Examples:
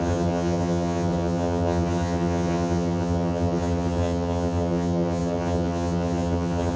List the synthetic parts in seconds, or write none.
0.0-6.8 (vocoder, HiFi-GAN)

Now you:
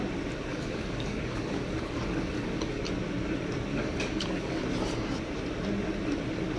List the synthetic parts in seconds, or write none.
0.5-2.8 (codec, DAC); 3.7-4.6

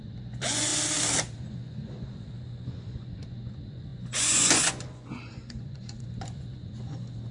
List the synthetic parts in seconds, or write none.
0.0-0.7 (vocoder, Vocos); 1.4-7.3